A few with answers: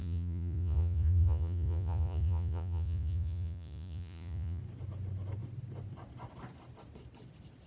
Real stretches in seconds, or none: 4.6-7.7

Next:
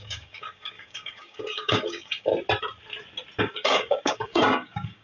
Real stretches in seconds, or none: 2.3-3.4

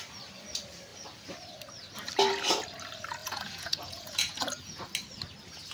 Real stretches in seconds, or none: 0.0-3.2; 4.8-5.7

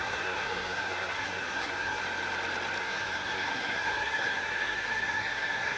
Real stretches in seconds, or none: 2.0-2.8

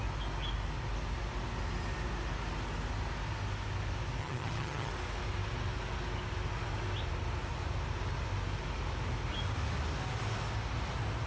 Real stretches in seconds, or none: 0.0-4.2; 4.9-11.3